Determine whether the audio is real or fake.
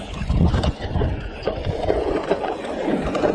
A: fake